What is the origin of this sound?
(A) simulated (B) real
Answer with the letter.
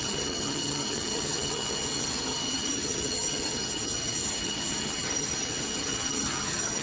A